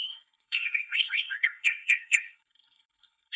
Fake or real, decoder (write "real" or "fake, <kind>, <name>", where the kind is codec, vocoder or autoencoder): fake, codec, SNAC